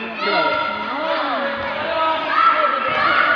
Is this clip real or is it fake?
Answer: real